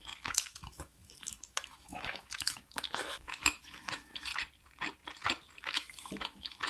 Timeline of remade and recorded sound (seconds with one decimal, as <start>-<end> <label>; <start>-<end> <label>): 0.0-4.3 remade; 4.3-5.6 recorded; 5.6-6.7 remade

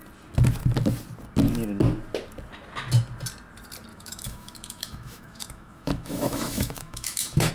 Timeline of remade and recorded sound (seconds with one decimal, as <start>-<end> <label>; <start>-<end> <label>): 0.0-3.9 recorded; 3.9-7.5 remade

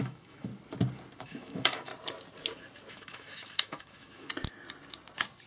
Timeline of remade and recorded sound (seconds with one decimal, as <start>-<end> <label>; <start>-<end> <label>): 0.0-0.5 remade; 0.5-1.2 recorded; 1.2-1.9 remade; 1.9-2.9 recorded; 2.9-4.3 remade; 4.3-5.5 recorded

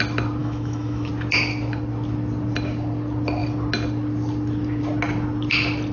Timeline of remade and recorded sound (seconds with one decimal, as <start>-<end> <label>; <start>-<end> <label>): 0.0-0.4 recorded; 0.4-1.1 remade; 1.1-5.9 recorded

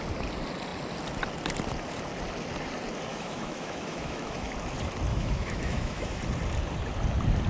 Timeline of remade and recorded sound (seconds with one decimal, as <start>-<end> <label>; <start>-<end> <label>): 0.0-3.1 recorded; 3.1-4.5 remade; 4.5-5.1 recorded; 5.1-6.2 remade; 6.2-7.5 recorded